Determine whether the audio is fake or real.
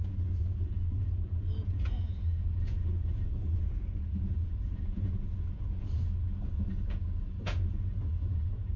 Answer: fake